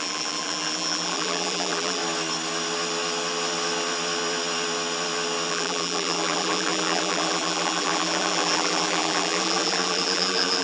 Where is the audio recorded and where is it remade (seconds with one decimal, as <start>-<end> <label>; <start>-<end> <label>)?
0.0-2.0 remade; 2.0-5.5 recorded; 5.5-10.6 remade